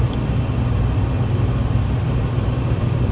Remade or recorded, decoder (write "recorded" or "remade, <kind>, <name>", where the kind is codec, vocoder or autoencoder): recorded